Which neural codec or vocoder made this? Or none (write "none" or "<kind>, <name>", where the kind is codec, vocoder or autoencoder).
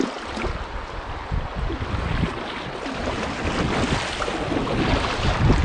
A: none